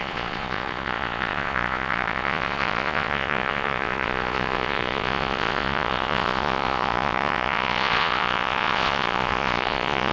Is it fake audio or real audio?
fake